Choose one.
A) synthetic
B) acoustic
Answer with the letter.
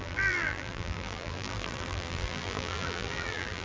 A